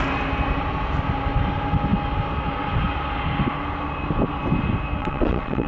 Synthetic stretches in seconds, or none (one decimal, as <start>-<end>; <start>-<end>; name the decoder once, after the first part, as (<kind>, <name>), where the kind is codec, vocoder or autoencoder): 5.0-5.7 (vocoder, WaveNeXt)